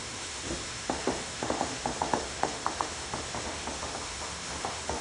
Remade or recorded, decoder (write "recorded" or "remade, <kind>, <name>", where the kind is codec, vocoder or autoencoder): remade, autoencoder, DAC-VAE